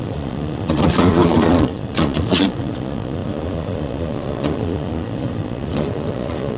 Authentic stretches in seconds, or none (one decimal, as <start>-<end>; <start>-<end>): none